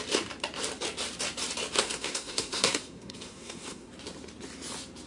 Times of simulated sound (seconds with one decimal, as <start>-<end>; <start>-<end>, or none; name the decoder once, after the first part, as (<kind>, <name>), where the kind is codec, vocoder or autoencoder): 1.8-3.9 (codec, SNAC)